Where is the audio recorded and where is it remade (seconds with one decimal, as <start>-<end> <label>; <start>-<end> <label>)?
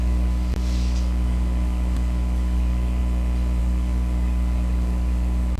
0.0-3.0 remade; 3.0-3.6 recorded; 3.6-5.6 remade